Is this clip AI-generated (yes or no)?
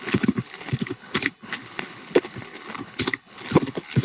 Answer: yes